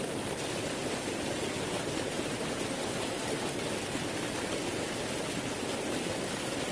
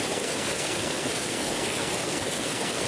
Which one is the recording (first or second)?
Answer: first